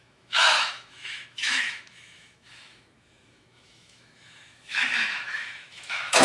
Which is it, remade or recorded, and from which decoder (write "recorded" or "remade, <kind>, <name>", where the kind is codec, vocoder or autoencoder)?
remade, autoencoder, DAC-VAE